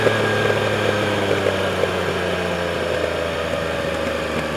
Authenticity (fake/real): real